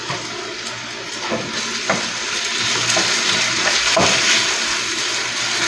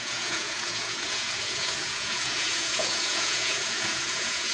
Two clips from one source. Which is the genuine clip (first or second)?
first